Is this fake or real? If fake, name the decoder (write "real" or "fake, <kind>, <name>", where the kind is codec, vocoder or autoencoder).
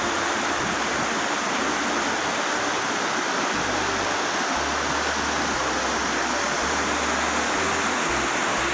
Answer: real